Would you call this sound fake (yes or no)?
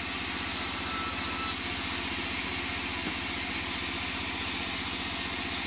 no